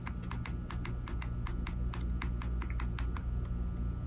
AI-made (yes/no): no